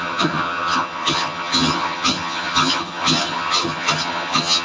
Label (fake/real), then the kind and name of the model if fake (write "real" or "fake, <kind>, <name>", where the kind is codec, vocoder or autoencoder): fake, vocoder, HiFi-GAN